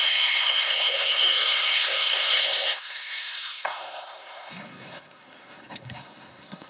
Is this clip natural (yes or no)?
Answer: no